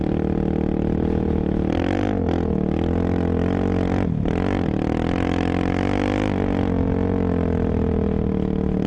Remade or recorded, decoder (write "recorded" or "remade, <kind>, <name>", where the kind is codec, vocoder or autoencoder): recorded